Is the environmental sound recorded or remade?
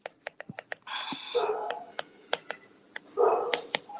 recorded